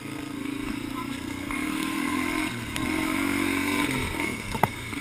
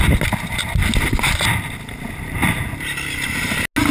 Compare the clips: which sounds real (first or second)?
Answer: second